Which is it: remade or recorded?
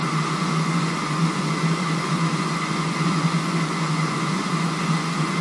remade